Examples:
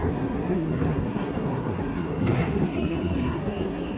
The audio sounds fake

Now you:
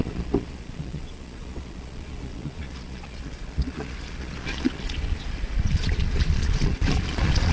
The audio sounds fake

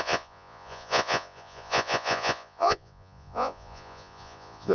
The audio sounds fake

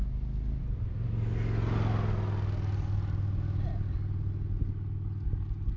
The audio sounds real